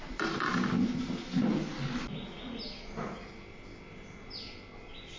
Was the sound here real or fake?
real